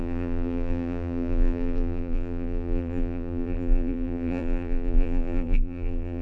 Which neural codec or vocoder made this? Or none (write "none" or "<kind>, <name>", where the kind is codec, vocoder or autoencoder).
vocoder, BigVGAN v2